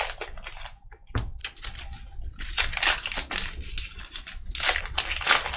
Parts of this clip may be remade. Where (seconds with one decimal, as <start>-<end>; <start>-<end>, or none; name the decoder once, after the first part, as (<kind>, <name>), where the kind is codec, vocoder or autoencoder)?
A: none

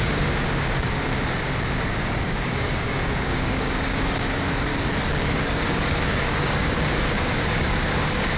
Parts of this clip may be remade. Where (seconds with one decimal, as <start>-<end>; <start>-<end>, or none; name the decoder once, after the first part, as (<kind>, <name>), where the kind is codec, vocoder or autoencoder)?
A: 0.0-1.1 (codec, DAC); 1.7-4.7; 5.2-8.4

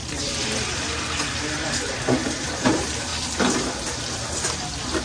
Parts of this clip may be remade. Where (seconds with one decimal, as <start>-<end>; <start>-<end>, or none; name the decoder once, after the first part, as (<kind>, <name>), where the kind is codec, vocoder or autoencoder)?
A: 1.7-3.1 (vocoder, BigVGAN v2)

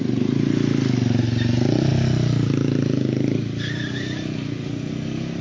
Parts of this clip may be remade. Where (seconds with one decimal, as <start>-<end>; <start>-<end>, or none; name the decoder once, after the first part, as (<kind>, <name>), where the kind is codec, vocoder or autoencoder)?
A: none

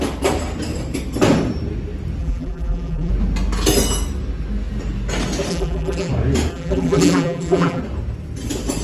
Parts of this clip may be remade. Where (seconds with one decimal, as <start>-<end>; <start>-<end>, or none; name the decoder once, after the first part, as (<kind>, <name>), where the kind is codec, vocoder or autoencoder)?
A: 2.2-3.1 (vocoder, BigVGAN v2); 5.5-6.1; 6.5-7.8